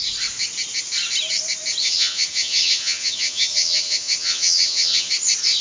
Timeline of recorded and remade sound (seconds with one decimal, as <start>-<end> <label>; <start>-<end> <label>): 0.0-1.8 recorded; 1.8-5.1 remade; 5.1-5.6 recorded